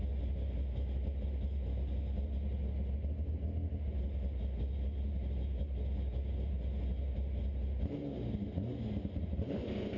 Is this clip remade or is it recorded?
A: recorded